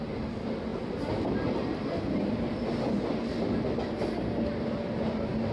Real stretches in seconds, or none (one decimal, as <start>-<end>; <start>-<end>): 0.0-5.5